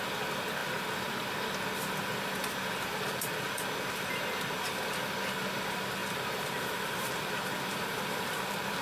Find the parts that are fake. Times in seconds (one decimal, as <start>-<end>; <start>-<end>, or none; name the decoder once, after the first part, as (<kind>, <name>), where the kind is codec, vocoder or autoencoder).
6.0-8.8 (vocoder, BigVGAN v2)